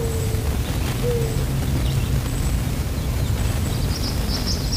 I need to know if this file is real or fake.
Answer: real